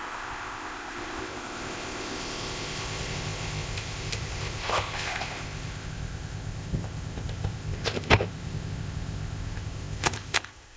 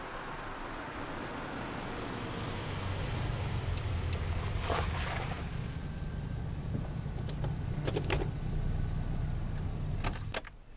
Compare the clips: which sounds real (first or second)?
second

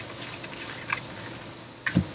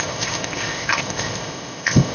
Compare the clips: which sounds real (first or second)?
first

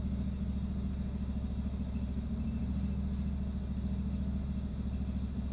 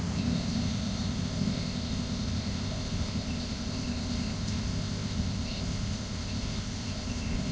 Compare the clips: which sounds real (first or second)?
first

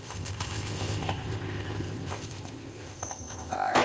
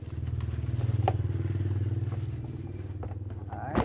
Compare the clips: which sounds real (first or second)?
second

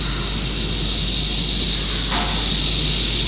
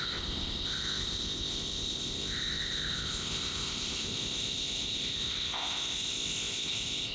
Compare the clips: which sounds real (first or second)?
first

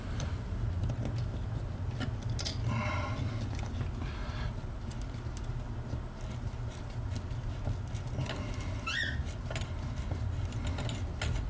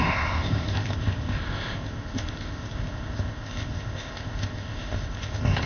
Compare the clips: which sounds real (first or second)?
first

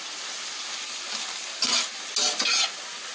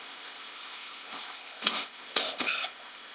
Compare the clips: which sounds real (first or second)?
first